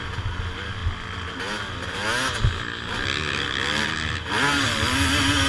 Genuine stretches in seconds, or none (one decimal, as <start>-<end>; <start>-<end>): 0.0-5.5